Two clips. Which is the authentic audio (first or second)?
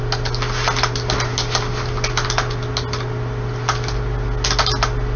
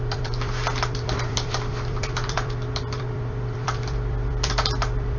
first